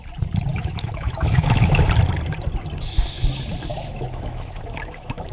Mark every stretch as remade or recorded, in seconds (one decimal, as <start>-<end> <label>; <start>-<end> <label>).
0.0-0.5 recorded; 0.5-1.8 remade; 1.8-3.7 recorded; 3.7-5.3 remade